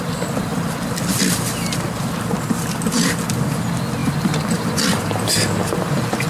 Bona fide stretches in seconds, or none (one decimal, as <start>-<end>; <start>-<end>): 0.0-0.5; 2.1-4.0; 4.7-6.3